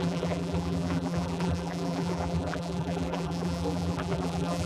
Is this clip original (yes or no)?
no